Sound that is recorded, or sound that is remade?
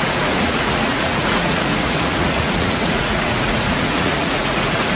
remade